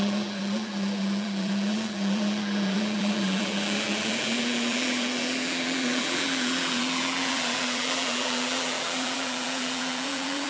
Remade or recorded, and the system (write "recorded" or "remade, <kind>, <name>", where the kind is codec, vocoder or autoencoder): remade, vocoder, BigVGAN v2